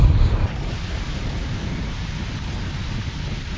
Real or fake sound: real